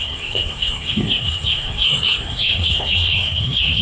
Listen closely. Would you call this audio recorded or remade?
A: remade